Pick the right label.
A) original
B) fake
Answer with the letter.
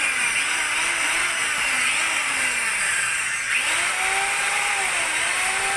A